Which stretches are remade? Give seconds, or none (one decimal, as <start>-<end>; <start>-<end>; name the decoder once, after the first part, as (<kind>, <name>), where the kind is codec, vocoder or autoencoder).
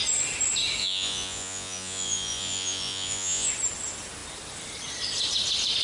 0.8-3.5 (vocoder, Vocos)